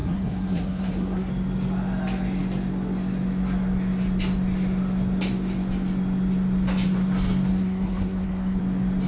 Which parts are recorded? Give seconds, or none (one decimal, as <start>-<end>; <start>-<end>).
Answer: 1.3-7.5; 8.6-9.1